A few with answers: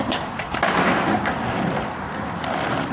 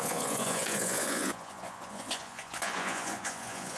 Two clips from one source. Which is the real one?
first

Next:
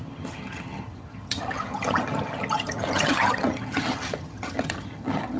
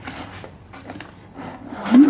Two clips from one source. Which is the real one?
second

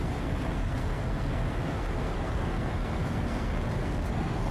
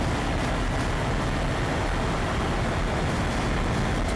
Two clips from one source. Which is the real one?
second